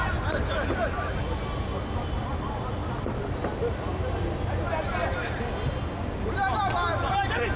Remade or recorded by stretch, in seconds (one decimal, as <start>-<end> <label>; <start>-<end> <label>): 0.0-7.6 recorded